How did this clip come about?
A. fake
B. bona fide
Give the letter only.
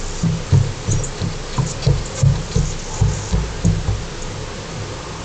B